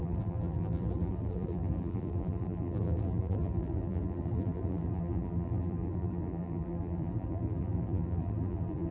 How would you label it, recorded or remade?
remade